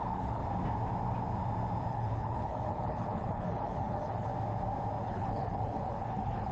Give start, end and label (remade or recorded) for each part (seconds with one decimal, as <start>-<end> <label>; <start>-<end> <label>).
0.0-0.4 remade; 0.4-1.9 recorded; 1.9-4.3 remade; 4.3-5.0 recorded; 5.0-6.5 remade